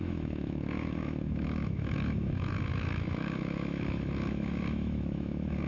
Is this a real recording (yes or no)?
no